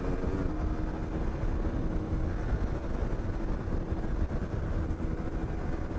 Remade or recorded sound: recorded